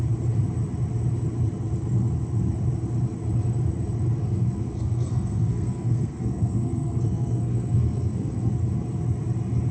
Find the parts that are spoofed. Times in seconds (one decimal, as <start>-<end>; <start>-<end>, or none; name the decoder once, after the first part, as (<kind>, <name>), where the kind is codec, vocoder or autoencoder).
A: 4.2-8.5 (codec, SNAC)